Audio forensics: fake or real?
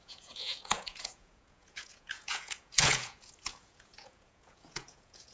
fake